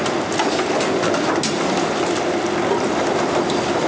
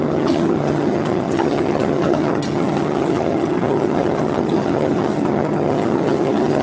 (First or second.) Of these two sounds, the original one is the first